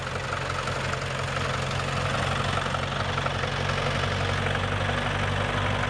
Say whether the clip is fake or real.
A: real